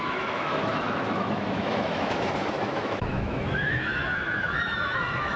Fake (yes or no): yes